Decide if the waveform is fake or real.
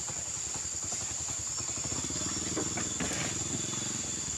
real